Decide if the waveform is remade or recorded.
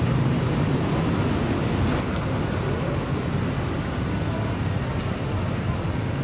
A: recorded